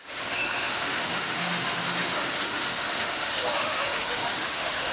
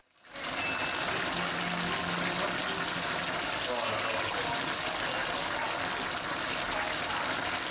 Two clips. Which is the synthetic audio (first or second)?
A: first